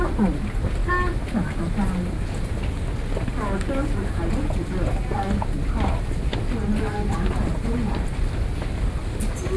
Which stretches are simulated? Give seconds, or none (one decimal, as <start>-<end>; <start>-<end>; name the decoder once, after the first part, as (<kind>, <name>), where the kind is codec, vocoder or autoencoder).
none